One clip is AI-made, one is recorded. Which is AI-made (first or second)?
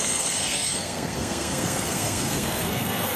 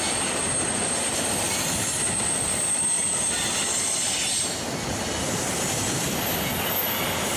first